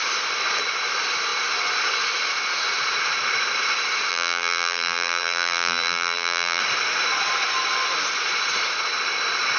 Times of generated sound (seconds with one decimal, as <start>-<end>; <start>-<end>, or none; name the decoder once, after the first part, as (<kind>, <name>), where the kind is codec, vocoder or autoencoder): 4.1-6.6 (vocoder, BigVGAN v2)

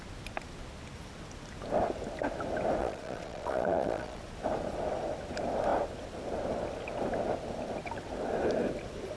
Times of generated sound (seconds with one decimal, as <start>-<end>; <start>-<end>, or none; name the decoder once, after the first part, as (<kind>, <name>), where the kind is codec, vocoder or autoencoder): 2.8-4.2 (vocoder, Vocos)

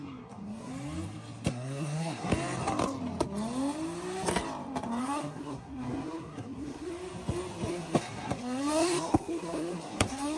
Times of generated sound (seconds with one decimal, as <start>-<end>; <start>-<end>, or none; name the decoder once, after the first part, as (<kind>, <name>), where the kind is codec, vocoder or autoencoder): 0.0-0.7 (codec, SNAC); 1.5-2.3; 5.0-6.9; 7.7-10.4

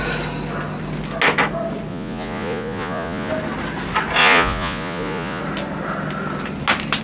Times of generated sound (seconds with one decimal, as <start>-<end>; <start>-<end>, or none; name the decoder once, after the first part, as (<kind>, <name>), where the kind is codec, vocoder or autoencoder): 1.9-3.3 (vocoder, Vocos); 4.2-5.4

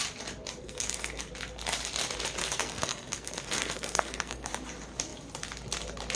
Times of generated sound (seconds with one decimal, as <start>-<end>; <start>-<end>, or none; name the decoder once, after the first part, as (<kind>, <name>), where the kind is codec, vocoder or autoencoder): 0.6-1.3 (codec, SNAC); 2.4-4.5

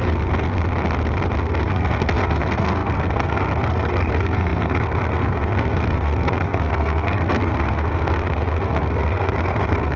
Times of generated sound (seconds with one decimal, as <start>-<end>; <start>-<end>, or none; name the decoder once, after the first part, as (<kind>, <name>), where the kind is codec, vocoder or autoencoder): 0.0-0.6 (codec, SNAC); 1.4-10.0

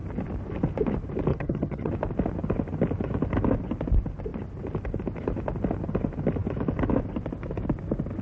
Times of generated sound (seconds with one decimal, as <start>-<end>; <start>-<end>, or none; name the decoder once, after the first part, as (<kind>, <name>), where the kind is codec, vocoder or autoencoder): 1.3-1.9 (vocoder, HiFi-GAN)